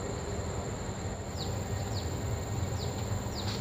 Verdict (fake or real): real